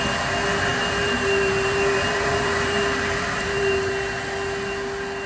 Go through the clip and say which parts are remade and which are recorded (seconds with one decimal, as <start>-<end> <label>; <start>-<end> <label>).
0.0-0.7 recorded; 0.7-3.9 remade; 3.9-5.3 recorded